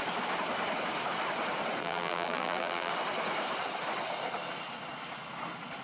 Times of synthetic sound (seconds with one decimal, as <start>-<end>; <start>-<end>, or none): 1.8-2.9